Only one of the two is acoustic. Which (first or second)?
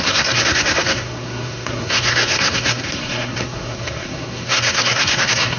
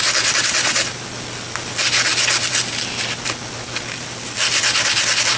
second